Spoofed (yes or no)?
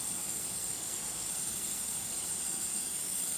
yes